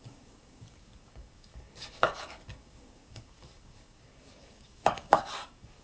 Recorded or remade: remade